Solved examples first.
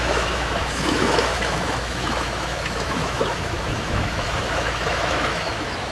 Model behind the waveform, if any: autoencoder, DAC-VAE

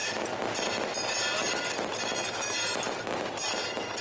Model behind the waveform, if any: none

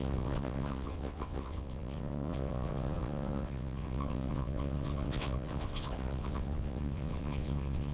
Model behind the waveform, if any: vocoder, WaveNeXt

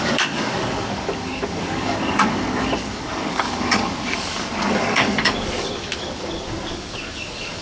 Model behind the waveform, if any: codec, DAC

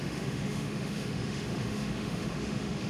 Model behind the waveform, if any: autoencoder, DAC-VAE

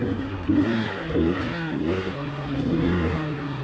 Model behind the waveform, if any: codec, SNAC